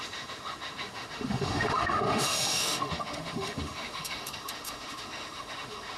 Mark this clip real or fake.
fake